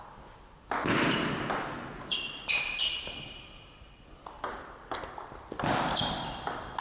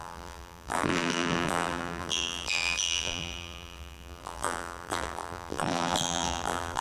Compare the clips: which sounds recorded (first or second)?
first